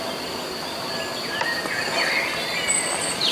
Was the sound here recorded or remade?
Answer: recorded